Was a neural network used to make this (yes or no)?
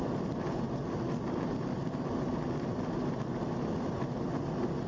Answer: no